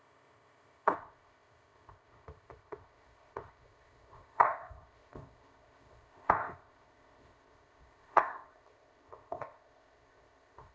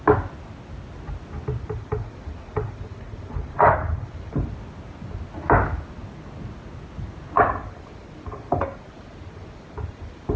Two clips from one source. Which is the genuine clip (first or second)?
second